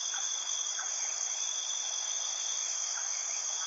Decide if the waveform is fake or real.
fake